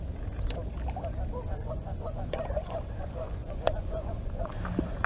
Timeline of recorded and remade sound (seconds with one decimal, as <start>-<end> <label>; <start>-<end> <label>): 0.0-1.5 recorded; 1.5-4.5 remade; 4.5-5.1 recorded